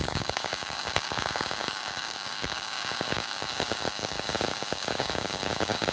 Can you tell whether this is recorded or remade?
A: remade